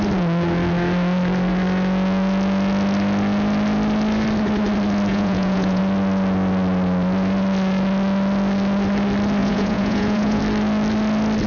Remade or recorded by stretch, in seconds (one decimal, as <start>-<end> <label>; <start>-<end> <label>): 0.0-5.1 recorded; 5.1-5.8 remade; 5.8-9.4 recorded; 9.4-10.4 remade; 10.4-11.5 recorded